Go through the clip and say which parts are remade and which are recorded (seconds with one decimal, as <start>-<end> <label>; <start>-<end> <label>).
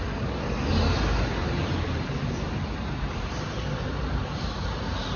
0.0-1.4 recorded; 1.4-4.5 remade; 4.5-5.2 recorded